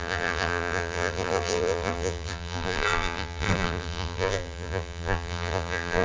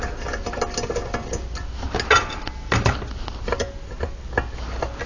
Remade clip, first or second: first